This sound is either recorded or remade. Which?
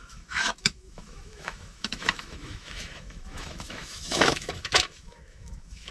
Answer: remade